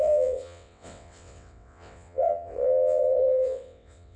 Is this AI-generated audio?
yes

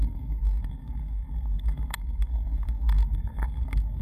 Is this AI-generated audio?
yes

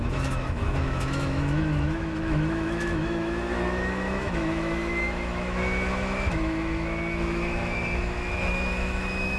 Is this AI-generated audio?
yes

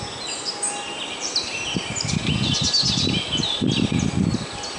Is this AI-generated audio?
no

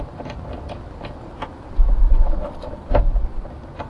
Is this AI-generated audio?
no